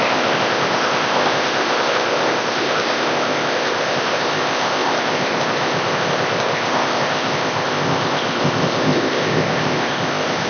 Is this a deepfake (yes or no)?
yes